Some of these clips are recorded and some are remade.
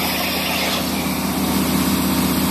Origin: recorded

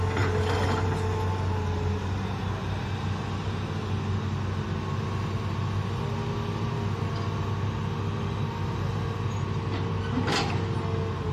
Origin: recorded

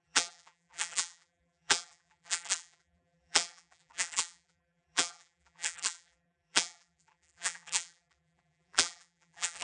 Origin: remade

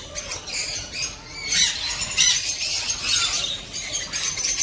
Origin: recorded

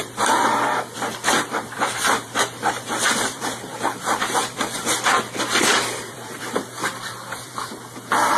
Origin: remade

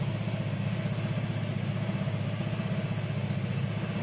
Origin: recorded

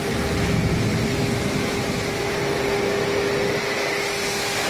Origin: recorded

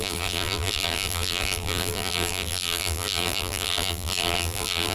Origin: remade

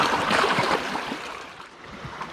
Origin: remade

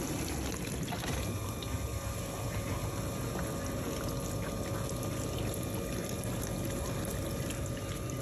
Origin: recorded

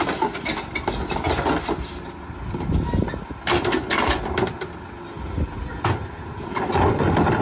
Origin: recorded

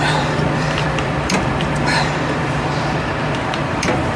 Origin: remade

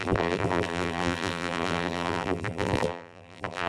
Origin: remade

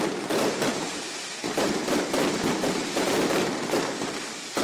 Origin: remade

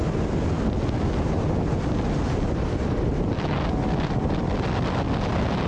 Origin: recorded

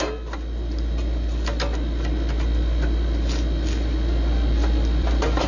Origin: recorded